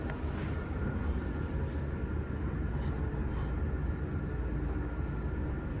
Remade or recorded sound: recorded